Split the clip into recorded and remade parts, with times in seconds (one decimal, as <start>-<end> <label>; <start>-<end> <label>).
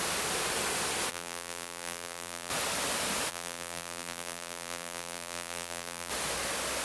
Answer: 0.0-1.1 recorded; 1.1-2.5 remade; 2.5-3.3 recorded; 3.3-6.1 remade; 6.1-6.8 recorded